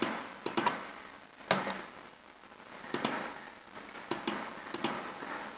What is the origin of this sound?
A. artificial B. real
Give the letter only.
B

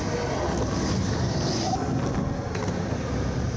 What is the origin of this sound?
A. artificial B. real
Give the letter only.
B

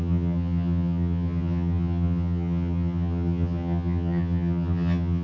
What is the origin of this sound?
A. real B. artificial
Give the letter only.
B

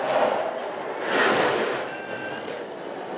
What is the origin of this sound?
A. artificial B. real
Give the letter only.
B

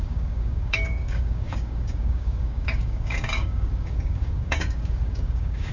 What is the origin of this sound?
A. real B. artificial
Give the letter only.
B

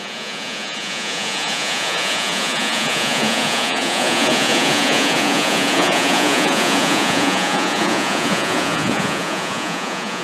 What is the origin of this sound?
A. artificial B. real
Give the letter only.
A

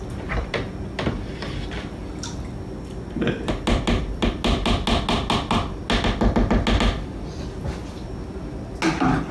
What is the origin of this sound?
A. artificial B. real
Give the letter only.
B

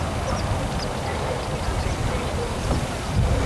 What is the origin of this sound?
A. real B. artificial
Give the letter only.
A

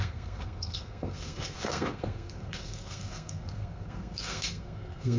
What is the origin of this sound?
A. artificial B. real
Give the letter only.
A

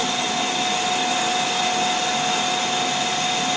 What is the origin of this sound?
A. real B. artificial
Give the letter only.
A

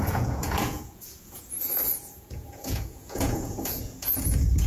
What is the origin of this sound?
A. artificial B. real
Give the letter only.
A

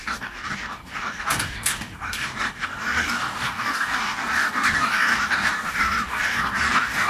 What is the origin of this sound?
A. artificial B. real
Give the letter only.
A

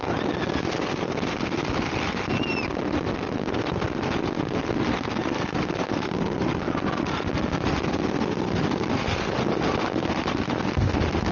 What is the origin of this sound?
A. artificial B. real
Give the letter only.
B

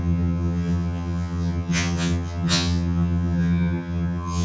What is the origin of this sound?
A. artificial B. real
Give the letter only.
A